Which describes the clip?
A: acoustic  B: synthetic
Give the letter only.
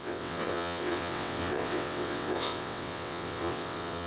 B